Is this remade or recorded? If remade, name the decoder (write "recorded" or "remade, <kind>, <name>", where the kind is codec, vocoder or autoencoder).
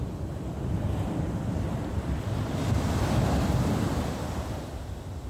recorded